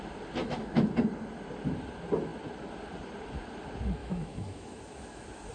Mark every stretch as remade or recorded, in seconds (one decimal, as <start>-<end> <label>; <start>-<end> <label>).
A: 0.0-0.4 recorded; 0.4-0.9 remade; 0.9-4.0 recorded; 4.0-5.5 remade